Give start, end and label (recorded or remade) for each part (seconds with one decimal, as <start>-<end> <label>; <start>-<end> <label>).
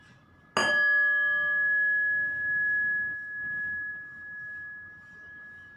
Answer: 0.0-5.8 recorded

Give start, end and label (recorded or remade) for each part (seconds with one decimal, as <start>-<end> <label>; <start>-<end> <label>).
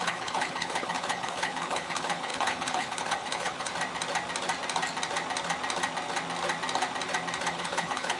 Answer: 0.0-3.7 remade; 3.7-7.5 recorded; 7.5-8.2 remade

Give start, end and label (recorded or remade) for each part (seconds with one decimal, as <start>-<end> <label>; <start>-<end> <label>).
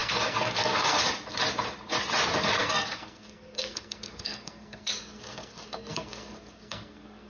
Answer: 0.0-1.0 remade; 1.0-2.5 recorded; 2.5-7.3 remade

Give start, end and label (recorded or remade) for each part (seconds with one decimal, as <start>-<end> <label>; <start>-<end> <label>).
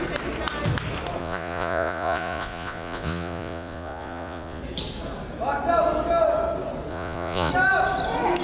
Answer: 0.0-1.2 recorded; 1.2-4.6 remade; 4.6-6.9 recorded; 6.9-7.5 remade; 7.5-8.4 recorded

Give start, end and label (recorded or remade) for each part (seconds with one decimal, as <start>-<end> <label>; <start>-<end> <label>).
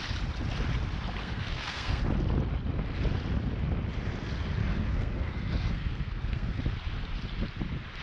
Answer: 0.0-1.2 recorded; 1.2-2.0 remade; 2.0-4.6 recorded; 4.6-6.6 remade; 6.6-8.0 recorded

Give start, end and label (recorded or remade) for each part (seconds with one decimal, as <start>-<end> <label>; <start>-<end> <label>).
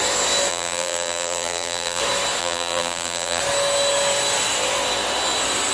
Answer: 0.0-0.5 recorded; 0.5-2.0 remade; 2.0-2.4 recorded; 2.4-3.4 remade; 3.4-5.7 recorded